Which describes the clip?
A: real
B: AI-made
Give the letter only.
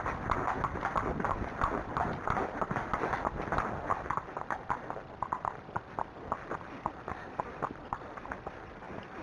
A